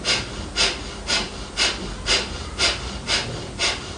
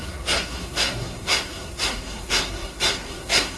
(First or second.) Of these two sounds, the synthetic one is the second